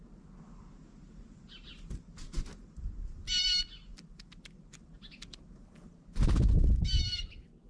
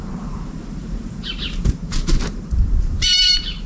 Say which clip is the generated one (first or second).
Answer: second